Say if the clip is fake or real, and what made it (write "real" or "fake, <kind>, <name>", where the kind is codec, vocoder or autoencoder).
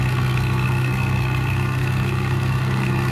fake, codec, SNAC